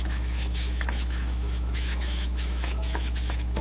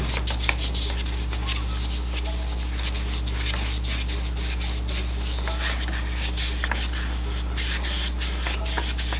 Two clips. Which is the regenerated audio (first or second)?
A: first